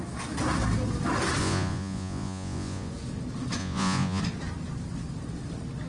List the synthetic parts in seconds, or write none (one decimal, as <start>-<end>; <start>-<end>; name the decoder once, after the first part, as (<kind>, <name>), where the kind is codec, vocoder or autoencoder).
1.4-2.9 (vocoder, Vocos); 3.6-4.2